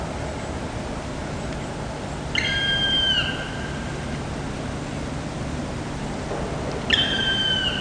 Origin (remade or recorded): recorded